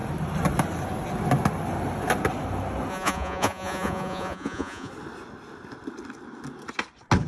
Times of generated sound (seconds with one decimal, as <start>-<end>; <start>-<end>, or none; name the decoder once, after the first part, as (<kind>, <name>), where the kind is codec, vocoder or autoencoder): 2.9-4.9 (vocoder, Vocos)